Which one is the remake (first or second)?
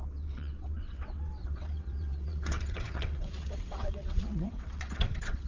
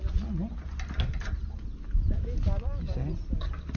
first